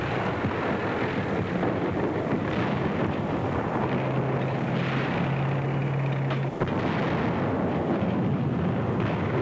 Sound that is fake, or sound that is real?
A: real